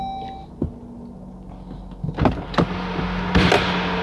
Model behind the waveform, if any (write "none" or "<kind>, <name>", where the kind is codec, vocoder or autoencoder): none